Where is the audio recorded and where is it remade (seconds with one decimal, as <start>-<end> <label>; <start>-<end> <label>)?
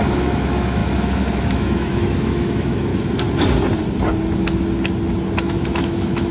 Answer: 0.0-2.9 remade; 2.9-5.4 recorded; 5.4-6.3 remade